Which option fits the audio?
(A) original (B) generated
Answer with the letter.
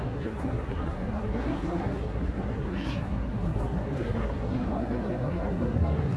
B